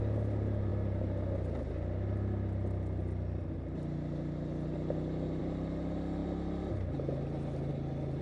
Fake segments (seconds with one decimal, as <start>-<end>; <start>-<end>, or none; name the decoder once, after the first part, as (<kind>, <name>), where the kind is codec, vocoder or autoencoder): none